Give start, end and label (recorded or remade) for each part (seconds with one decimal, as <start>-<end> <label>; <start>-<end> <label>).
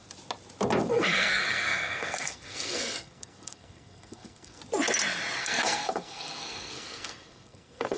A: 0.0-0.9 recorded; 0.9-4.6 remade; 4.6-5.4 recorded; 5.4-8.0 remade